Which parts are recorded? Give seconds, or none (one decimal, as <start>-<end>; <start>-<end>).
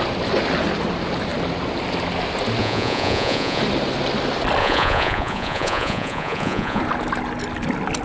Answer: 0.0-2.6; 3.6-4.6; 6.8-8.0